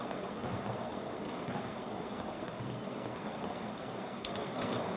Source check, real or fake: fake